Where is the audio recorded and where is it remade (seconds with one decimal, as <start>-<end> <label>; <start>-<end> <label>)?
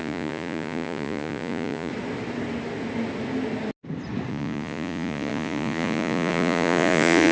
0.0-1.9 remade; 1.9-4.3 recorded; 4.3-7.3 remade